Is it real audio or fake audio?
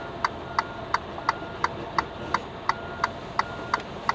real